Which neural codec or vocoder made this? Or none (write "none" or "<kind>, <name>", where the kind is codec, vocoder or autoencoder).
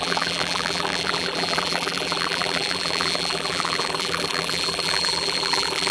vocoder, BigVGAN v2